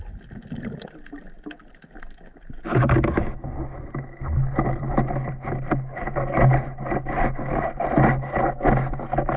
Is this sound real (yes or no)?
yes